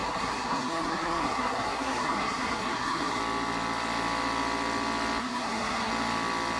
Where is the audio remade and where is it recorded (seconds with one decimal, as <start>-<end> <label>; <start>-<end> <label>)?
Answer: 0.0-3.2 remade; 3.2-5.2 recorded; 5.2-5.9 remade; 5.9-6.6 recorded